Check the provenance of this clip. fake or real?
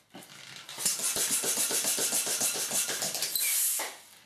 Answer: real